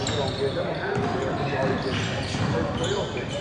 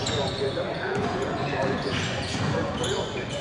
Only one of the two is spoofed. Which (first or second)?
second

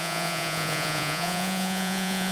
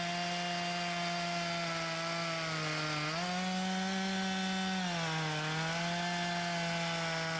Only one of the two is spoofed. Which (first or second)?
first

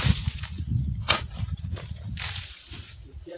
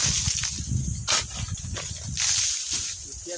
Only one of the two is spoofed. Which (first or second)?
first